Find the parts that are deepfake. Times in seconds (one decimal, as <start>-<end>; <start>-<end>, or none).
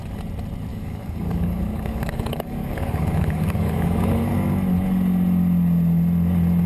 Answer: 0.7-4.3